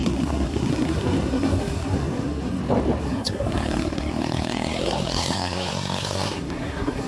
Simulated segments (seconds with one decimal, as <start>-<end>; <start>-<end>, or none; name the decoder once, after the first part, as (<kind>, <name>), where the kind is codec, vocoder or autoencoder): 0.0-2.6 (codec, SNAC); 3.0-7.1